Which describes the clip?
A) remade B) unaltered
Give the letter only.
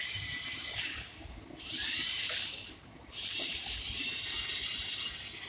A